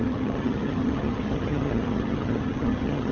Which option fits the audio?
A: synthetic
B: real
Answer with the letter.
A